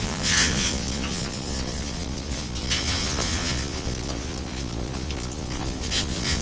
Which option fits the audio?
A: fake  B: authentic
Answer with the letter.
A